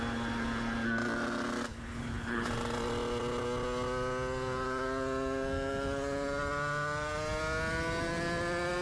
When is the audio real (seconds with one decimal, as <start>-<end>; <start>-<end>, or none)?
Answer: 0.0-1.7; 2.5-8.8